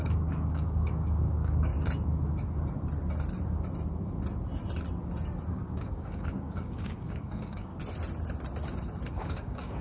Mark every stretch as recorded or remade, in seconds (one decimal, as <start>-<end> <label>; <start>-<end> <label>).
0.0-1.7 remade; 1.7-5.5 recorded; 5.5-7.7 remade; 7.7-9.1 recorded; 9.1-9.8 remade